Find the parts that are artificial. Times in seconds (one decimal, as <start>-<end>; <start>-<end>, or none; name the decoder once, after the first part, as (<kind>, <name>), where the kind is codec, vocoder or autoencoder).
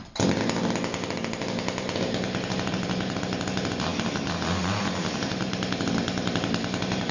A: none